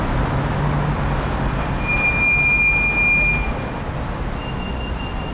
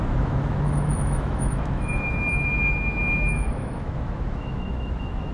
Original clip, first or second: first